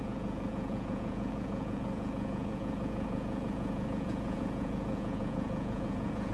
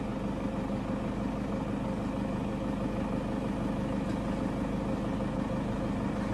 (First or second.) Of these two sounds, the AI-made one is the first